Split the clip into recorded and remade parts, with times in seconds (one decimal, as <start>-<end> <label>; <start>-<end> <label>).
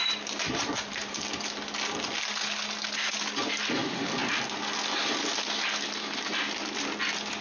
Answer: 0.0-1.3 remade; 1.3-3.7 recorded; 3.7-4.2 remade; 4.2-7.4 recorded